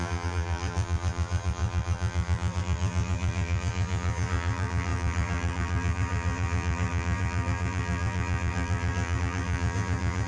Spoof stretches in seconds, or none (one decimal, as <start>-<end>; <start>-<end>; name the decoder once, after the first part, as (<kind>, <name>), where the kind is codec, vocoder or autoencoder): 0.0-10.3 (vocoder, BigVGAN v2)